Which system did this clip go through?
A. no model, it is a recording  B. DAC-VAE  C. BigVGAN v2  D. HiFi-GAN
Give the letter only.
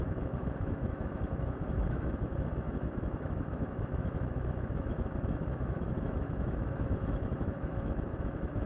B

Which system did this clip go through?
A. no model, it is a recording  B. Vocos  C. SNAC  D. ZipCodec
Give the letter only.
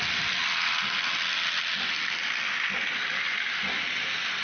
A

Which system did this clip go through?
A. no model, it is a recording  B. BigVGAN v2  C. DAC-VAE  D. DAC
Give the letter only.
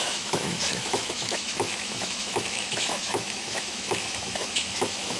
C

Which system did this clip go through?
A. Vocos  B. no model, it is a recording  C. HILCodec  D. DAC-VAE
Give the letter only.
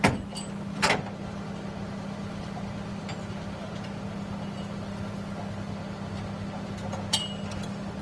B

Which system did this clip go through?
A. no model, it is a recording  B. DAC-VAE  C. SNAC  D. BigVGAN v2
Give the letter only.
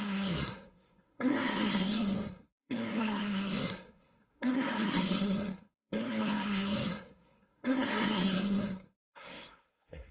C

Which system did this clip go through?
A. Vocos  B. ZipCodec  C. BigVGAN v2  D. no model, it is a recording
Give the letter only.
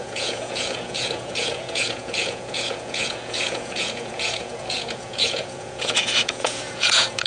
A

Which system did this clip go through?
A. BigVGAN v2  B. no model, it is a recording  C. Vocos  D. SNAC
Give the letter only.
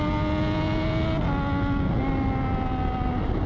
B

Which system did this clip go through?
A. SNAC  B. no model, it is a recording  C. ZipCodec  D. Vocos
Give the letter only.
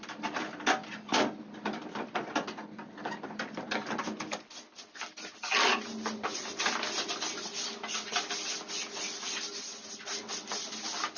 B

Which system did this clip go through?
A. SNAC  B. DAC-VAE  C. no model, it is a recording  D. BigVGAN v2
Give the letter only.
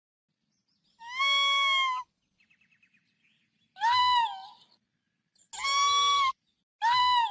C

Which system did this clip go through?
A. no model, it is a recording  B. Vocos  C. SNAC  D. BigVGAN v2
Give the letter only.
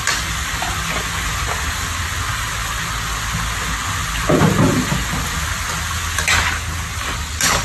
A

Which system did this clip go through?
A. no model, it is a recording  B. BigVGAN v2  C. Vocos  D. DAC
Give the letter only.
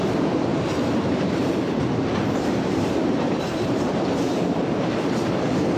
B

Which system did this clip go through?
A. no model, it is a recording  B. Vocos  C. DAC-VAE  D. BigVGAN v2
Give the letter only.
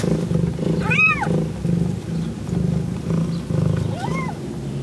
A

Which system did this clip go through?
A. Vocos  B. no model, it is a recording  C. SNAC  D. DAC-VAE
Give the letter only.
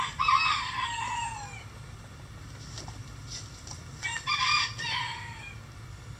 B